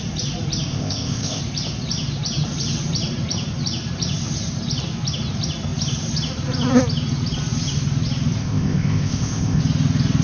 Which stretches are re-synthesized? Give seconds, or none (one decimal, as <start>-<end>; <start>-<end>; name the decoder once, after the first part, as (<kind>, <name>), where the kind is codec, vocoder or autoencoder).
0.7-1.4 (codec, ZipCodec); 8.4-9.6